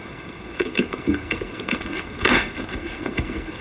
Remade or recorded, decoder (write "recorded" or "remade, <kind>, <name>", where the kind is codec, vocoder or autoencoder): remade, codec, SNAC